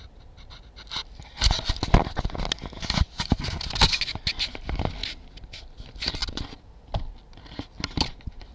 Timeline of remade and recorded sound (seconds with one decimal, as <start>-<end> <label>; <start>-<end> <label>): 0.0-8.5 recorded